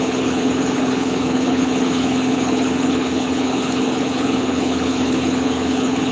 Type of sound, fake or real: fake